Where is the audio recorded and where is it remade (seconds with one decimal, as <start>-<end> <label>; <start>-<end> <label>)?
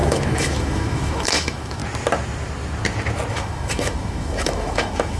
0.0-1.8 remade; 1.8-3.3 recorded; 3.3-5.2 remade